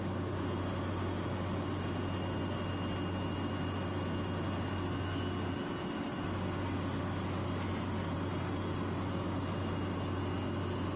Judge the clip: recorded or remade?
recorded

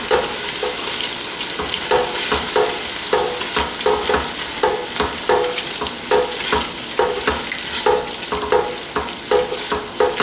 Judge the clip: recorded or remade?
recorded